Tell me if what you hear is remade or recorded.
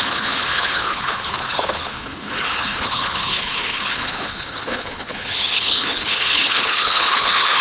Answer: remade